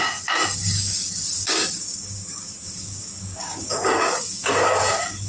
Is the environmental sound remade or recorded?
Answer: remade